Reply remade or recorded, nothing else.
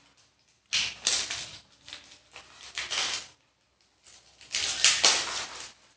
recorded